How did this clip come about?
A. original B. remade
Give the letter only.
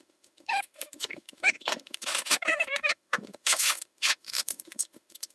B